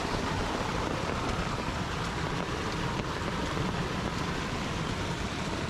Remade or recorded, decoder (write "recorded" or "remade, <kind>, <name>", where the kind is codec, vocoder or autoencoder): recorded